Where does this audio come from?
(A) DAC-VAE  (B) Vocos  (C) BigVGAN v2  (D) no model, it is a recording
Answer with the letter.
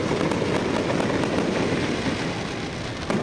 D